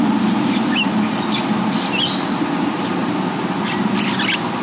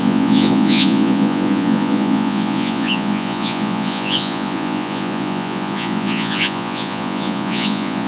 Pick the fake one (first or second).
second